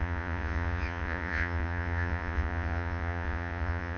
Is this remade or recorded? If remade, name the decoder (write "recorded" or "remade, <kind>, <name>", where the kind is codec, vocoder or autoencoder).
remade, vocoder, Vocos